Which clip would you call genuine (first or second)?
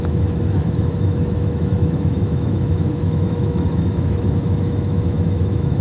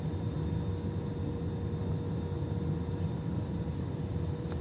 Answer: second